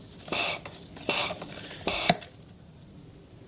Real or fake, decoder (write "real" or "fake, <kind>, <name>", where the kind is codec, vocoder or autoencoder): real